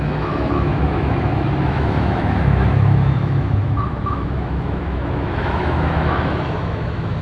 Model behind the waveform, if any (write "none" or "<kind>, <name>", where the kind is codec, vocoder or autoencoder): autoencoder, DAC-VAE